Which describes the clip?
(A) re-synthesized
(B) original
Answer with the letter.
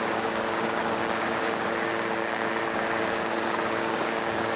A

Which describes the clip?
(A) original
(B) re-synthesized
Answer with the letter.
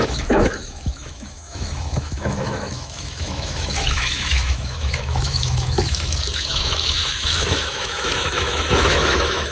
B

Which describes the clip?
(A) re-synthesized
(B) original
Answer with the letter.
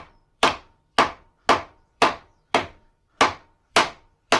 A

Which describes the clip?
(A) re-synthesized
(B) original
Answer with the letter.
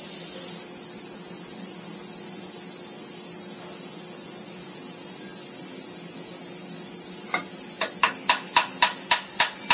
B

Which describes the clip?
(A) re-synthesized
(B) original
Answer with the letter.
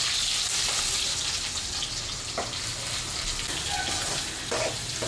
B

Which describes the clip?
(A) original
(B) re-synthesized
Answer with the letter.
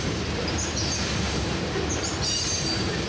A